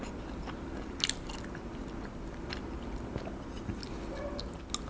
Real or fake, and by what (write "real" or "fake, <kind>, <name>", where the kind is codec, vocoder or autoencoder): real